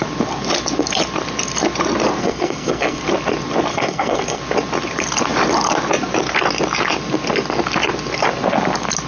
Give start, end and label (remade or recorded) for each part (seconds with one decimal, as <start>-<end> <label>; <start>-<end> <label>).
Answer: 0.0-2.2 recorded; 2.2-3.0 remade; 3.0-3.7 recorded; 3.7-4.4 remade; 4.4-9.1 recorded